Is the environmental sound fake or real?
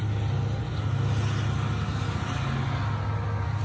real